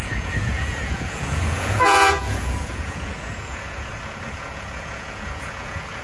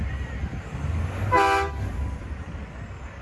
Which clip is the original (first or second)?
second